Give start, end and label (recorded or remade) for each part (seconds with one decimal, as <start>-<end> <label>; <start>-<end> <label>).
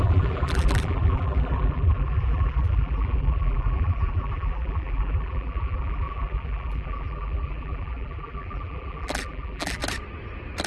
0.0-9.8 remade; 9.8-10.7 recorded